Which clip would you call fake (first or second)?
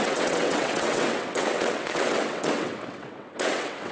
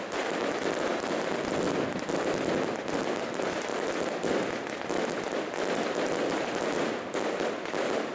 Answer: first